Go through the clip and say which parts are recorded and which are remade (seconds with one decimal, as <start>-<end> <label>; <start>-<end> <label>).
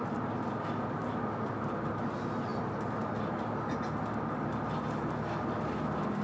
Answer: 0.0-2.5 recorded; 2.5-3.5 remade; 3.5-6.2 recorded